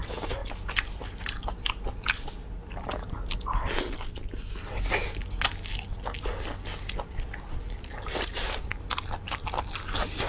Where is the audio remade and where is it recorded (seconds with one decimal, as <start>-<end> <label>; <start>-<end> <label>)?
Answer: 0.0-10.3 recorded